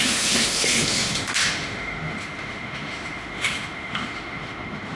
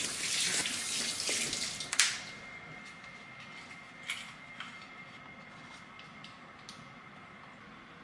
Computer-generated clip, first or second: first